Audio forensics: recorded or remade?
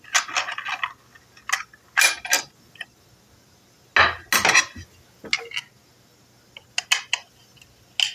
recorded